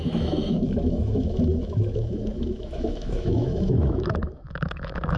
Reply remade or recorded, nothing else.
remade